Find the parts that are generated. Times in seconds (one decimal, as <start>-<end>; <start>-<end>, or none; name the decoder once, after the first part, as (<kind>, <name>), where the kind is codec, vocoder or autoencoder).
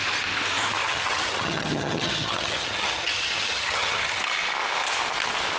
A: 0.8-4.2 (vocoder, HiFi-GAN)